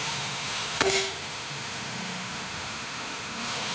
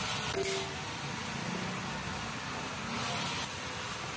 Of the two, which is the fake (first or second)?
first